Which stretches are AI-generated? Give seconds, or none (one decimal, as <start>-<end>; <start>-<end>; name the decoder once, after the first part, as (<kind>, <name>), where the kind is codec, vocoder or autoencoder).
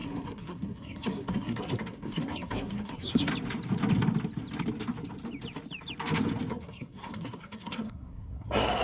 0.0-3.3 (codec, SNAC); 6.5-8.8